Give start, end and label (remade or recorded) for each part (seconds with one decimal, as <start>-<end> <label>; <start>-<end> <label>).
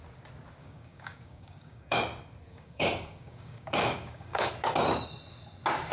0.0-0.6 recorded; 0.6-2.0 remade; 2.0-2.5 recorded; 2.5-4.5 remade; 4.5-5.9 recorded